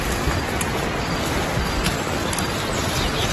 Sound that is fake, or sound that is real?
real